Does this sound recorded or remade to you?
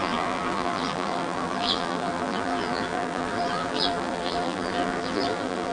remade